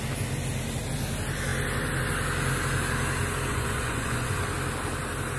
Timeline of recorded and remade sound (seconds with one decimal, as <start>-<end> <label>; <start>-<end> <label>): 0.0-3.5 recorded; 3.5-4.4 remade; 4.4-5.4 recorded